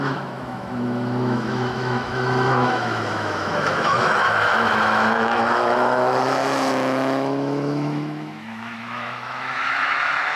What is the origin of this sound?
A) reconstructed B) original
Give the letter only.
A